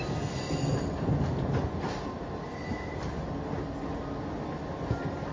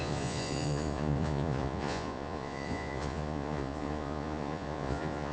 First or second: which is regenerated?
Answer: second